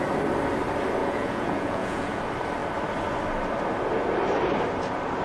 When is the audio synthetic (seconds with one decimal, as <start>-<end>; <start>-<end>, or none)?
1.0-2.2